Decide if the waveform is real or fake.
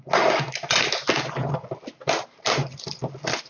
real